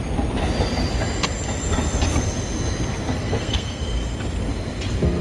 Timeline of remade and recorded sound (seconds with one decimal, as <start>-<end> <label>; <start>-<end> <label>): 0.0-3.1 recorded; 3.1-3.8 remade; 3.8-5.2 recorded